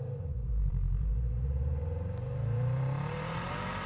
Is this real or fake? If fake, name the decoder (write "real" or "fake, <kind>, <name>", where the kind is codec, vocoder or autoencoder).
fake, vocoder, BigVGAN v2